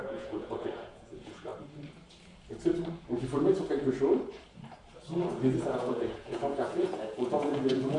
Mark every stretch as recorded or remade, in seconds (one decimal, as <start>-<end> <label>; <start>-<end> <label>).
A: 0.0-1.5 remade; 1.5-5.6 recorded; 5.6-8.0 remade